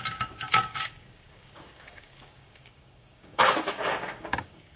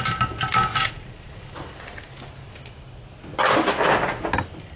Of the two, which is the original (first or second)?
second